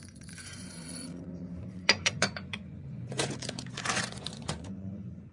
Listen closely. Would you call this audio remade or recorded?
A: remade